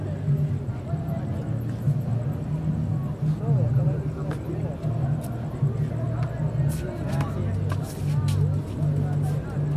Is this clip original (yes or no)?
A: yes